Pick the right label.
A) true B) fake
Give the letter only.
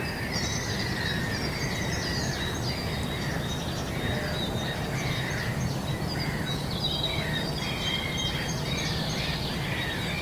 A